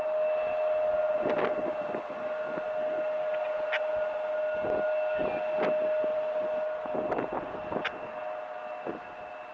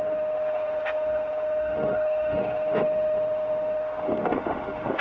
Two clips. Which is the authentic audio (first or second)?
first